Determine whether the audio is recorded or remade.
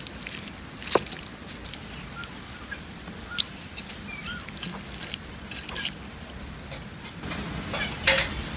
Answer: recorded